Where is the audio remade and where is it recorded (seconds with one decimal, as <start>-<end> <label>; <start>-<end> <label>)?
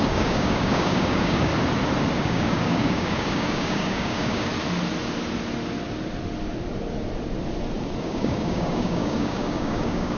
0.0-1.5 remade; 1.5-2.2 recorded; 2.2-4.5 remade; 4.5-8.0 recorded; 8.0-10.2 remade